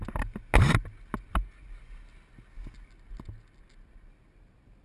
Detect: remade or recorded recorded